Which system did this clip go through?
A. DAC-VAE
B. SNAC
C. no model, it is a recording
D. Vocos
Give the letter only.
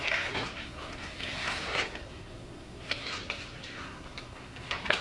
B